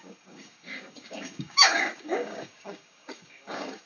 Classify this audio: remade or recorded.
remade